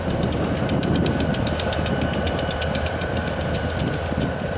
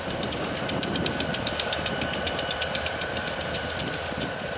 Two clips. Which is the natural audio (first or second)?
first